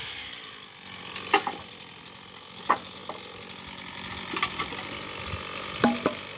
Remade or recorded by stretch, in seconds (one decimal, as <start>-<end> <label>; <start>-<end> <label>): 0.0-6.4 recorded